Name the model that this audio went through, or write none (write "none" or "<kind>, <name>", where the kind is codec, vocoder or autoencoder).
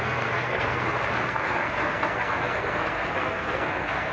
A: codec, SNAC